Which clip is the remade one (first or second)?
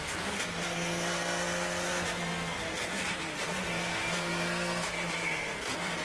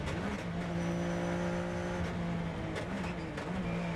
first